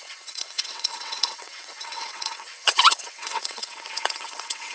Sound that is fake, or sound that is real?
fake